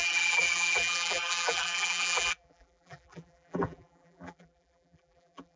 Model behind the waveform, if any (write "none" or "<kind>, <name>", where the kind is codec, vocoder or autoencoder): vocoder, BigVGAN v2